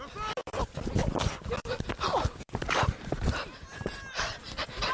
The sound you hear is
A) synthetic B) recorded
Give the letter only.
B